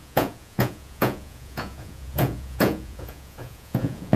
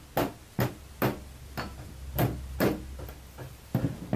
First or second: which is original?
second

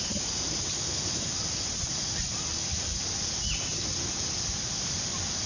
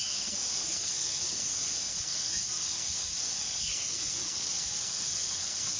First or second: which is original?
first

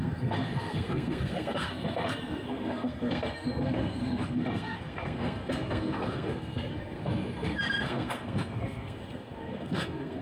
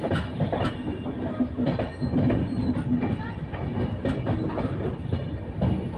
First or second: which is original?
second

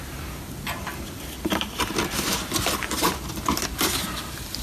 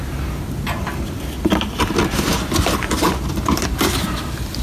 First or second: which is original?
second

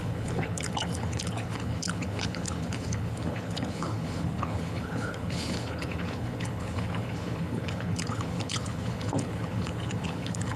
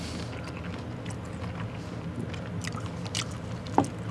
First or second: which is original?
second